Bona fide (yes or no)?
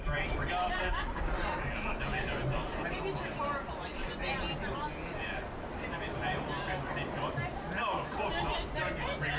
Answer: yes